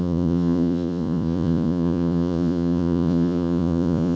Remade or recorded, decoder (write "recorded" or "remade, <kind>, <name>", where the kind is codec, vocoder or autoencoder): remade, vocoder, Vocos